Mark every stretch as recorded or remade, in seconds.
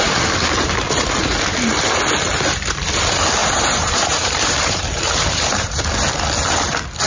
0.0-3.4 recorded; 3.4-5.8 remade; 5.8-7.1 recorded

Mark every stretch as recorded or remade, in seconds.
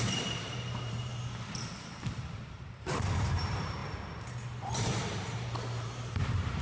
0.0-1.1 remade; 1.1-1.7 recorded; 1.7-3.8 remade; 3.8-4.7 recorded; 4.7-6.6 remade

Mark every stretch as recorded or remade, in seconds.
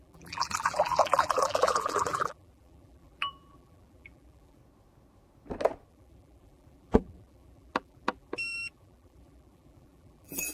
0.0-4.6 remade; 4.6-5.9 recorded; 5.9-10.5 remade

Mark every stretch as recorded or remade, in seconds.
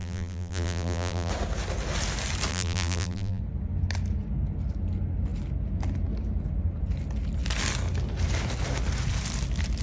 0.0-1.3 remade; 1.3-2.5 recorded; 2.5-3.4 remade; 3.4-9.8 recorded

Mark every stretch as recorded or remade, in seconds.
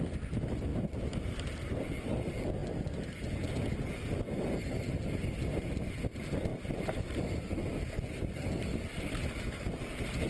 0.0-0.7 recorded; 0.7-1.8 remade; 1.8-6.5 recorded; 6.5-7.5 remade; 7.5-8.7 recorded; 8.7-9.5 remade; 9.5-10.3 recorded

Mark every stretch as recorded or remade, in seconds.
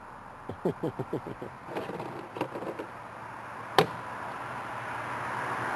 0.0-0.7 recorded; 0.7-3.7 remade; 3.7-5.8 recorded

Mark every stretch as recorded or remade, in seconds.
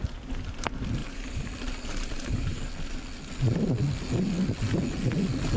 0.0-1.0 recorded; 1.0-1.5 remade; 1.5-1.9 recorded; 1.9-2.7 remade; 2.7-5.6 recorded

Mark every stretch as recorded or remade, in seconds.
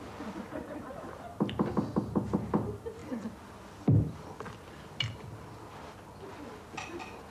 0.0-7.3 recorded